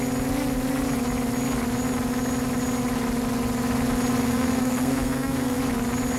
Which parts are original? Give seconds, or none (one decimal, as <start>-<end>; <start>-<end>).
0.0-4.2; 5.6-6.2